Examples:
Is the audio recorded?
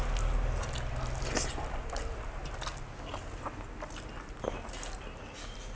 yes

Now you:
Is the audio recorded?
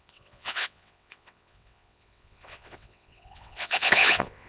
no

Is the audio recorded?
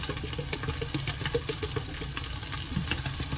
yes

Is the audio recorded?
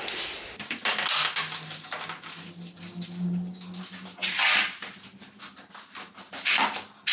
yes